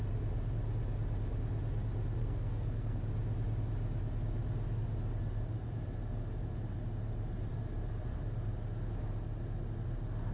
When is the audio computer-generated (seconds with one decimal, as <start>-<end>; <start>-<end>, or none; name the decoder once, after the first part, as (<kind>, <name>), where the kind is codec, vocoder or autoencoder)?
2.2-3.0 (codec, SNAC)